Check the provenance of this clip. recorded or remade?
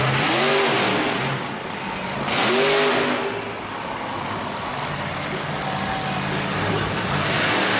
recorded